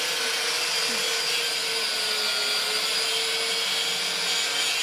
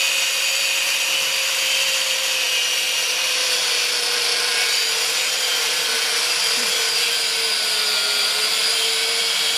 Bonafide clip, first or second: first